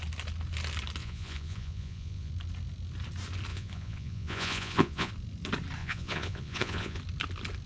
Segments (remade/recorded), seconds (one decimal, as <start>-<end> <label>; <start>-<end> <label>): 0.0-1.0 recorded; 1.0-2.3 remade; 2.3-3.5 recorded; 3.5-5.1 remade; 5.1-5.8 recorded; 5.8-7.0 remade; 7.0-7.7 recorded